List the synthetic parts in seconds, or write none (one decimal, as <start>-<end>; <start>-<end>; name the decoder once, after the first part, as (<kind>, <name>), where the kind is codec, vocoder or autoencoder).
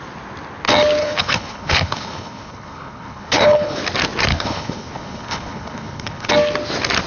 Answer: 1.0-3.8 (codec, HILCodec); 4.3-6.3